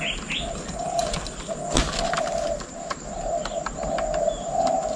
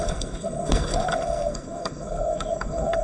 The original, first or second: first